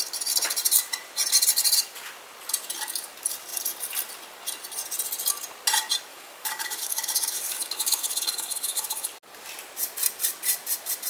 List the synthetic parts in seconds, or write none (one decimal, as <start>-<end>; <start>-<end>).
6.1-9.1

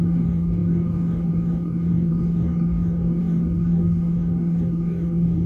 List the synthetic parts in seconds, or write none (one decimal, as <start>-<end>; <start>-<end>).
0.0-5.5

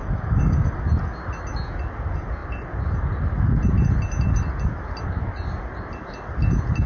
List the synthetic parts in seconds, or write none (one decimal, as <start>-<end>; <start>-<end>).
0.0-0.8

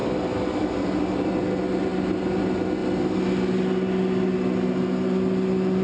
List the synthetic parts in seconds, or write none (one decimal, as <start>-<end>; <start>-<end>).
none